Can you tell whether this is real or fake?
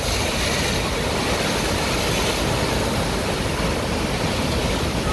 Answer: real